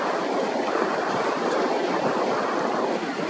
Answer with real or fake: fake